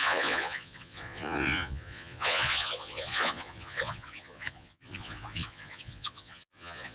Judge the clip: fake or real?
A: fake